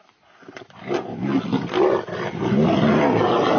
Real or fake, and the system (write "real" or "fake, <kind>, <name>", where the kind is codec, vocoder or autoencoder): real